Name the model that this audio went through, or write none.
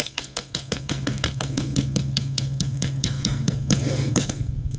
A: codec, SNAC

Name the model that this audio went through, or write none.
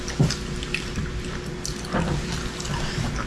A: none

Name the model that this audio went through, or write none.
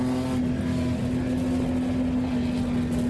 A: none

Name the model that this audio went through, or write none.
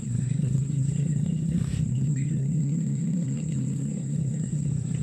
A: codec, SNAC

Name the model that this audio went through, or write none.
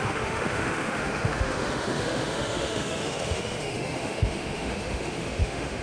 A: autoencoder, DAC-VAE